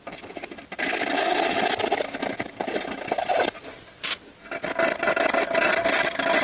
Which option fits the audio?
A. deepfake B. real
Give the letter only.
B